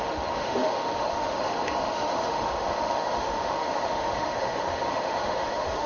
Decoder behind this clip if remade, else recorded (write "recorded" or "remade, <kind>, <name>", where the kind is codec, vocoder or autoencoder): remade, autoencoder, DAC-VAE